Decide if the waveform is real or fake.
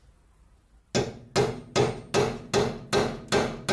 real